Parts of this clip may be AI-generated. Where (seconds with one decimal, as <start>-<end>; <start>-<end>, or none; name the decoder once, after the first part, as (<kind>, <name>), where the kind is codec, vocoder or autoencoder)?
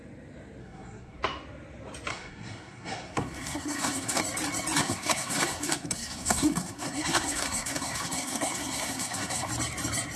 0.6-1.2 (codec, SNAC); 2.1-4.2; 4.8-9.5